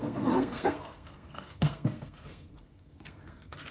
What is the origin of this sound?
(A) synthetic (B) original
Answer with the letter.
A